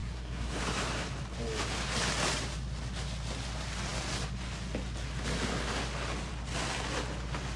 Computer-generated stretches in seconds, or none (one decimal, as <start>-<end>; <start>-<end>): 0.0-0.6